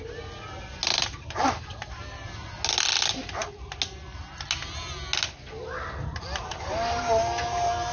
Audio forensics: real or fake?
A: real